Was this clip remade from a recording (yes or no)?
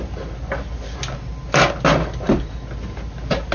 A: no